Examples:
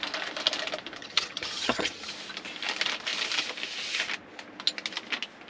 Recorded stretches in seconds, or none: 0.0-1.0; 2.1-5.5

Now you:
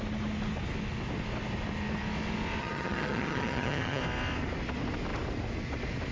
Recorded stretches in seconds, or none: 0.0-2.6; 4.0-6.1

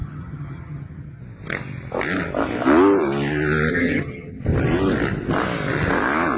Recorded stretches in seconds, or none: 1.2-3.7; 4.4-6.4

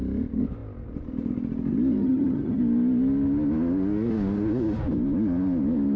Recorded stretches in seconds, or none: 0.0-2.0; 2.6-6.0